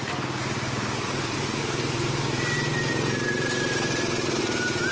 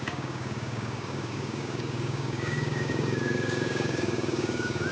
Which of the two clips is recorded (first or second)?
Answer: first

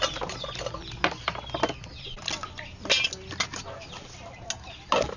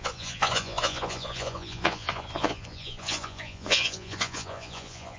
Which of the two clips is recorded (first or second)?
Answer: first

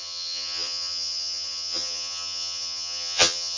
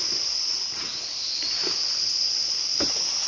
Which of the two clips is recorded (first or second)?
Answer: second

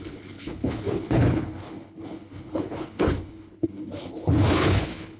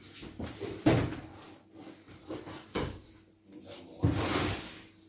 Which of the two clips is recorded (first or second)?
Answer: second